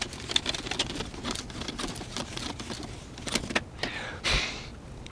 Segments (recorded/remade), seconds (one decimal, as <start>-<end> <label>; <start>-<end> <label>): 0.0-5.1 recorded